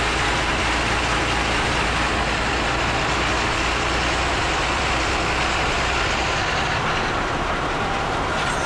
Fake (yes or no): no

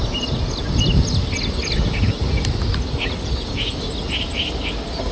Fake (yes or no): no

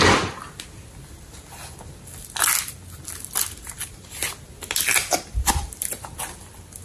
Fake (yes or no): no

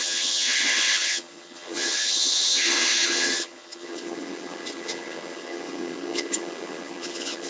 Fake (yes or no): yes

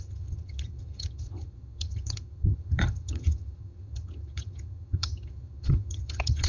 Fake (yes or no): yes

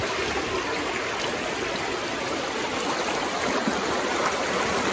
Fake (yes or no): no